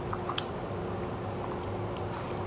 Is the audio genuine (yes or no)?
yes